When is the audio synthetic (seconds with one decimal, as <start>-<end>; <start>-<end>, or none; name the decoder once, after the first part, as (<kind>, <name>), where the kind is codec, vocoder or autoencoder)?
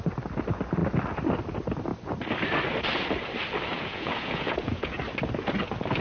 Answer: 3.7-5.0 (vocoder, Vocos)